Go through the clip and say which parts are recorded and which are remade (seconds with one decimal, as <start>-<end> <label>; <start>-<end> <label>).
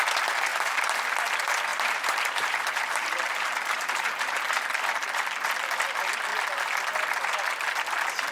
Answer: 0.0-0.5 recorded; 0.5-1.1 remade; 1.1-1.7 recorded; 1.7-4.4 remade; 4.4-8.3 recorded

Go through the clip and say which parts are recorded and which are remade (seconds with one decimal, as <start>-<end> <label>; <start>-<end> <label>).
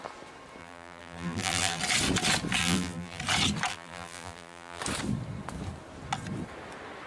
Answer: 0.0-0.6 recorded; 0.6-1.8 remade; 1.8-2.6 recorded; 2.6-3.2 remade; 3.2-3.7 recorded; 3.7-4.8 remade; 4.8-7.1 recorded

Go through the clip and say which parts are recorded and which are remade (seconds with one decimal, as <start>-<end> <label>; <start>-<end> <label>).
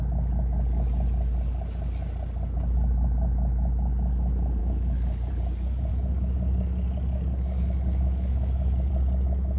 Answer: 0.0-4.6 recorded; 4.6-5.3 remade; 5.3-5.9 recorded; 5.9-8.9 remade; 8.9-9.6 recorded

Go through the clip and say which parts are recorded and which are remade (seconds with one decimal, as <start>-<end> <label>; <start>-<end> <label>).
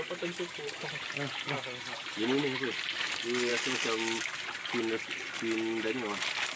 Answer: 0.0-6.6 recorded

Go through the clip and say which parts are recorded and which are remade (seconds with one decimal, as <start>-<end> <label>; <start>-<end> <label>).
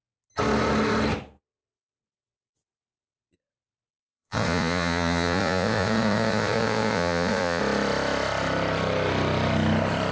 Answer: 0.0-3.9 recorded; 3.9-7.6 remade; 7.6-10.1 recorded